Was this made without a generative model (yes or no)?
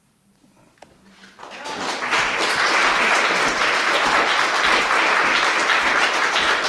yes